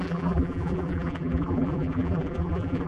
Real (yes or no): no